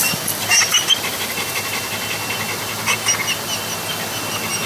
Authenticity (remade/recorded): recorded